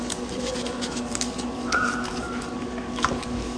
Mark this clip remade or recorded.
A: remade